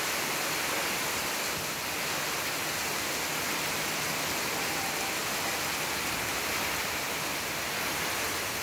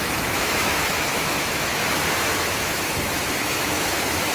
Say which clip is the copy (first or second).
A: second